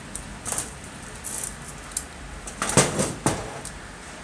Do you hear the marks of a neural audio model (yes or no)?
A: no